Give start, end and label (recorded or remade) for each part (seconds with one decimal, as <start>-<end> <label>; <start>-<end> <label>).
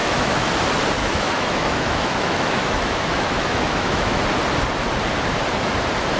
0.0-0.5 remade; 0.5-1.0 recorded; 1.0-4.2 remade; 4.2-6.2 recorded